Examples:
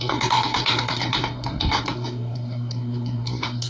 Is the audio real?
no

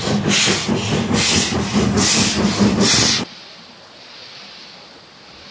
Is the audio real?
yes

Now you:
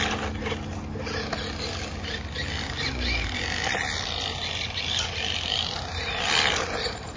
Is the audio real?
yes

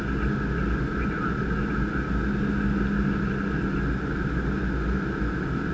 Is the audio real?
yes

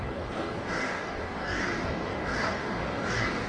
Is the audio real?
no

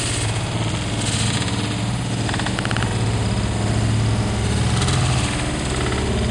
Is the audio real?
yes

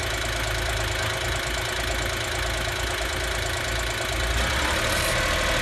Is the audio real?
yes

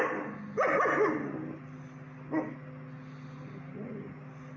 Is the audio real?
yes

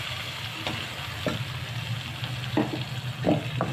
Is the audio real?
yes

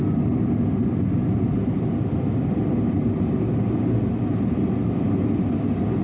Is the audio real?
yes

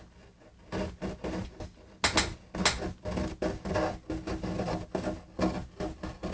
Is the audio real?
yes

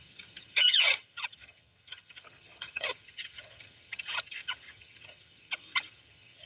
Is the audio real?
no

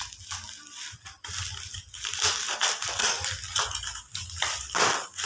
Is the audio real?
yes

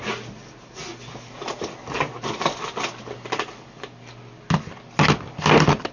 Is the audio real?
yes